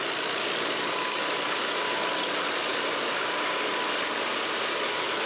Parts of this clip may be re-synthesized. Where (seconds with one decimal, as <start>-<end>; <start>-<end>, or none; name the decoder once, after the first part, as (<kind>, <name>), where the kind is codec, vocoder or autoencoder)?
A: none